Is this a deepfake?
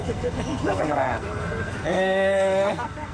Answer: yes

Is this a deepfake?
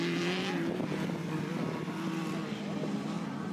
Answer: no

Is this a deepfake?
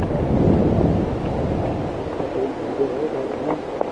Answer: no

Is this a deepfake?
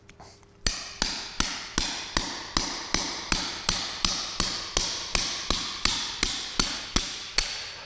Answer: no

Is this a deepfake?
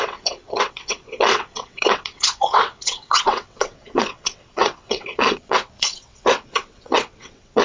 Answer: yes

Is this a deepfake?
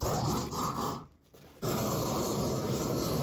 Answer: no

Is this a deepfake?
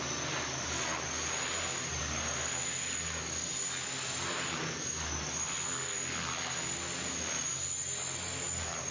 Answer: no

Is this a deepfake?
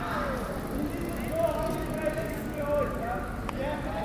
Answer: no